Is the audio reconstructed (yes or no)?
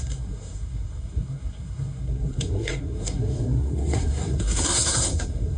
yes